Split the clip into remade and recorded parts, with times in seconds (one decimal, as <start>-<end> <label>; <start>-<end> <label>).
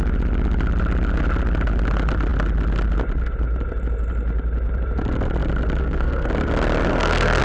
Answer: 0.0-5.8 recorded; 5.8-6.3 remade; 6.3-6.9 recorded; 6.9-7.4 remade